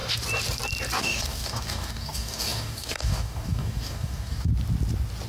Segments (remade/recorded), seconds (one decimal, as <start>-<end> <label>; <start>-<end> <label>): 0.0-1.0 recorded; 1.0-4.5 remade; 4.5-5.3 recorded